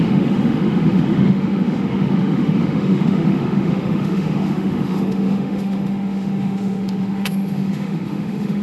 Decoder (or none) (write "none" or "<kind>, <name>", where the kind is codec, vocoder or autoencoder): autoencoder, DAC-VAE